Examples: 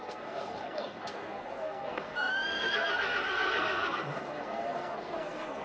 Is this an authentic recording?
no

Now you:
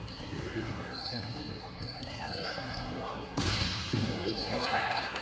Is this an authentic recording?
no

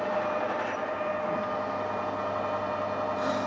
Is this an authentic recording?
yes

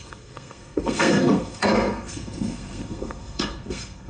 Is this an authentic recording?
no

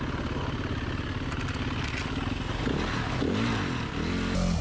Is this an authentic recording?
yes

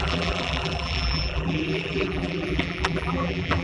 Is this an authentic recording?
no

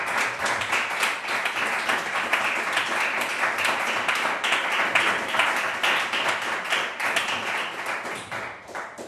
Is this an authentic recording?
yes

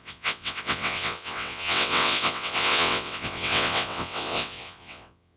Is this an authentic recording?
no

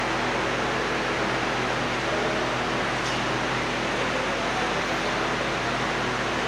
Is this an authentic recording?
yes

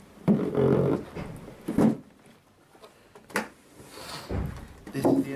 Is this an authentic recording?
yes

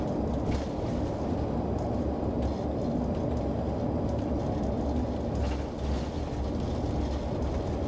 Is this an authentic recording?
yes